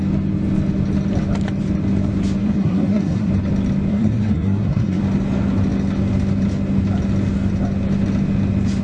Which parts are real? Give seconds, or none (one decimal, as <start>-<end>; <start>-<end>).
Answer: 0.0-2.4; 3.3-3.9; 5.0-8.8